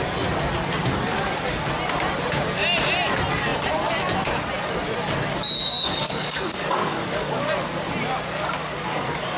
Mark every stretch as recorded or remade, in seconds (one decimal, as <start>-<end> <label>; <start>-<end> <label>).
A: 0.0-5.6 recorded; 5.6-7.5 remade; 7.5-8.6 recorded; 8.6-9.4 remade